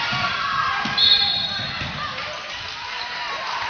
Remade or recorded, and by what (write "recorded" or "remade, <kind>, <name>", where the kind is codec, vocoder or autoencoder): recorded